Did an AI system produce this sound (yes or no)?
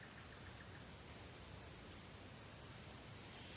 no